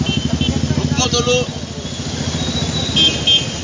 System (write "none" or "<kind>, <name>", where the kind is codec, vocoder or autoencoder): none